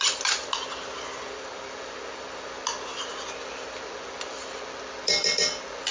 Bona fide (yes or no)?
yes